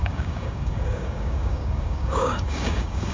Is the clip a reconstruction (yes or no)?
yes